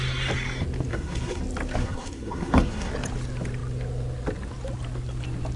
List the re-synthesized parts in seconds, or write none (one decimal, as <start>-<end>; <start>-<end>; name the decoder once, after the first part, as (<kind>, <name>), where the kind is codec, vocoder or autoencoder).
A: 0.9-1.4 (codec, SNAC); 1.8-2.9

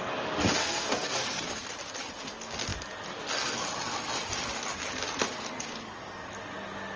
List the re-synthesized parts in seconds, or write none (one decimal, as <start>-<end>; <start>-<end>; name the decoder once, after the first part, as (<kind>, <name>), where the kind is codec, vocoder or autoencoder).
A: 0.6-1.4 (codec, SNAC)

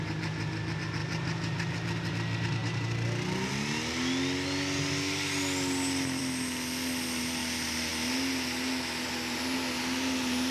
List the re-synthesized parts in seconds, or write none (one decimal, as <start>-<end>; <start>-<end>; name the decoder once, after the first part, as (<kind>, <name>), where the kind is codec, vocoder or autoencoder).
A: none

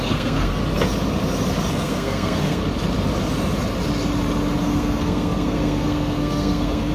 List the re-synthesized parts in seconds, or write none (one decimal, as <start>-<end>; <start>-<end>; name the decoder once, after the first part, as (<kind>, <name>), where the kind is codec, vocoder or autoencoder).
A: 0.0-0.6 (codec, SNAC); 1.7-2.6; 4.6-6.9

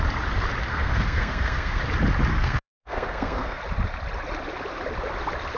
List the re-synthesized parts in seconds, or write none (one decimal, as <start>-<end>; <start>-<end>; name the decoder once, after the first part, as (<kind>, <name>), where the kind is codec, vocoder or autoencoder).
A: 0.7-1.8 (codec, SNAC); 2.3-3.6

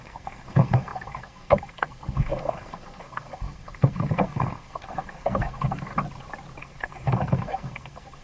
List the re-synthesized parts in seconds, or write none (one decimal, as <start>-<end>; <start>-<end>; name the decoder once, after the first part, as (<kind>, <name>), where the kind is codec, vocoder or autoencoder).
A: 0.0-5.9 (codec, SNAC); 6.6-8.2